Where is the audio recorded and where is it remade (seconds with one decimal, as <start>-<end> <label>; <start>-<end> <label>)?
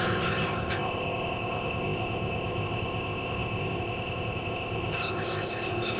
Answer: 0.0-6.0 remade